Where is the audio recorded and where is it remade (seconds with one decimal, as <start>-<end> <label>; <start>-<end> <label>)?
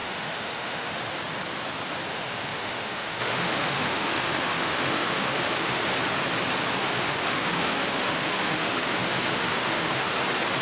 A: 0.0-1.0 remade; 1.0-2.1 recorded; 2.1-5.8 remade; 5.8-6.8 recorded; 6.8-10.2 remade; 10.2-10.6 recorded